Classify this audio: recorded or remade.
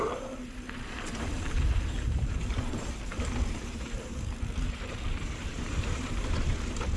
remade